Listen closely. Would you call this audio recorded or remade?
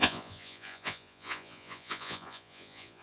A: remade